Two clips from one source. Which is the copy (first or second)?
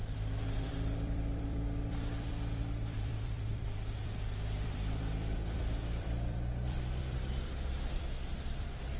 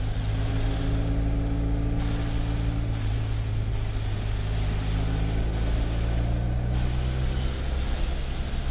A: first